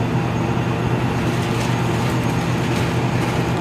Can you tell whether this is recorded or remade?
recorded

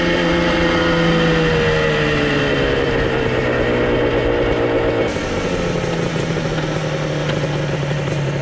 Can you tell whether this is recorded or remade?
recorded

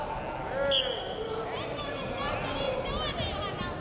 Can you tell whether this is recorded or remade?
recorded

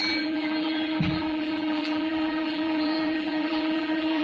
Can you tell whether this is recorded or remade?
remade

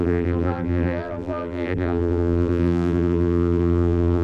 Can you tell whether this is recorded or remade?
remade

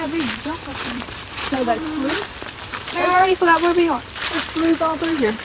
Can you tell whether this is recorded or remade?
remade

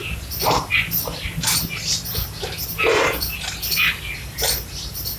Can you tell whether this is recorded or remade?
recorded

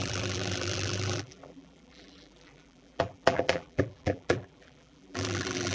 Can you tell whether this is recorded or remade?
remade